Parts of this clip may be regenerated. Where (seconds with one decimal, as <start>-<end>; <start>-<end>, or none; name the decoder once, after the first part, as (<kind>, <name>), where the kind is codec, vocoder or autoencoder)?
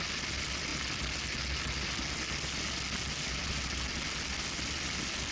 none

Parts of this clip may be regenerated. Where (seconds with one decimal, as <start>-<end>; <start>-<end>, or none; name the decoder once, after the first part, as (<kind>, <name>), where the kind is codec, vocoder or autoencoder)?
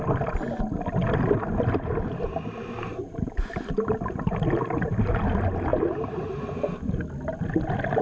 2.9-5.2 (vocoder, BigVGAN v2); 5.7-7.0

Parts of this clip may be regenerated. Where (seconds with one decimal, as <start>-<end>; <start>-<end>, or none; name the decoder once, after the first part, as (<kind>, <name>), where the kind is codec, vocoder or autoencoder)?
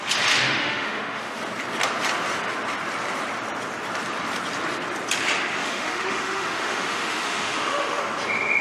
0.4-1.4 (autoencoder, DAC-VAE); 5.6-8.0